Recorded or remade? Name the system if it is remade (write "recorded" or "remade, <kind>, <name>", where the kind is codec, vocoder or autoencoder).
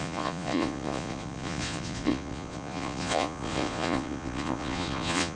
remade, vocoder, Vocos